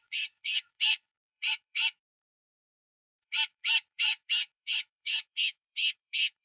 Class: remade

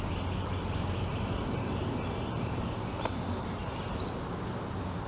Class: recorded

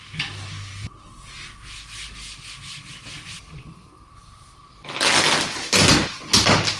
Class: recorded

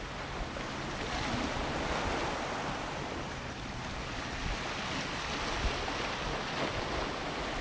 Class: recorded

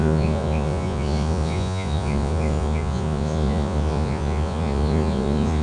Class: remade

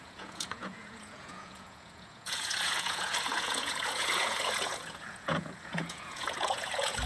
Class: remade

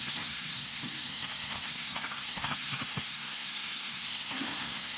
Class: remade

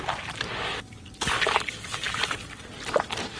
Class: recorded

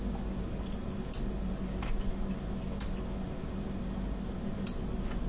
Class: recorded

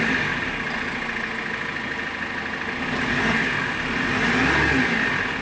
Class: recorded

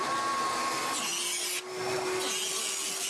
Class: recorded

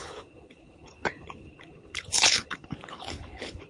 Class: remade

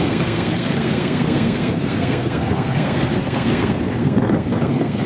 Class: remade